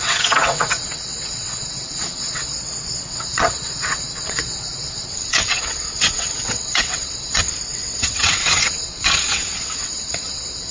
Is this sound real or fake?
fake